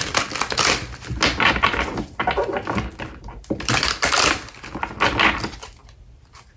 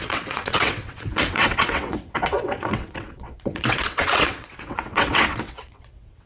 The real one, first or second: first